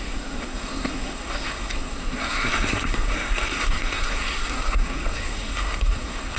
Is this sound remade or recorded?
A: remade